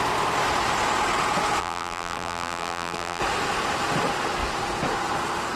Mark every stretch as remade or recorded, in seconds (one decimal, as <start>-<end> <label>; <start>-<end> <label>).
0.0-1.6 recorded; 1.6-3.2 remade; 3.2-5.6 recorded